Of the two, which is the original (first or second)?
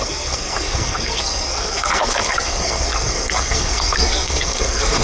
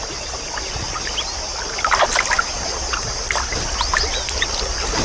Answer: second